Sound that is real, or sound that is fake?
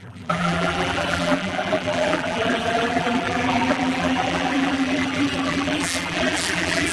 fake